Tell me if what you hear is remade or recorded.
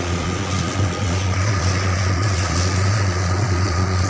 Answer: remade